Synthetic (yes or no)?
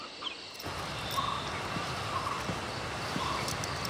no